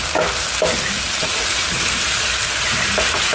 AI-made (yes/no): no